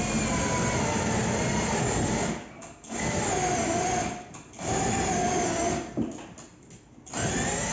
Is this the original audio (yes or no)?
yes